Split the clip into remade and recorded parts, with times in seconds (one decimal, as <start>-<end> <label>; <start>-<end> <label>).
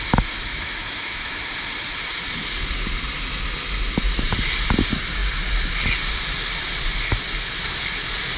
0.0-0.5 recorded; 0.5-1.4 remade; 1.4-8.4 recorded